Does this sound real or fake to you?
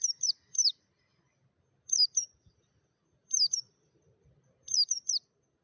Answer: real